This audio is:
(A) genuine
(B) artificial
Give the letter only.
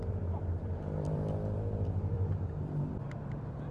B